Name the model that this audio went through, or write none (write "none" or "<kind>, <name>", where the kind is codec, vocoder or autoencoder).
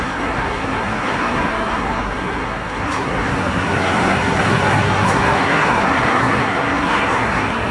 codec, SNAC